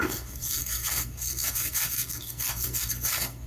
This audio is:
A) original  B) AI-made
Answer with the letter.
B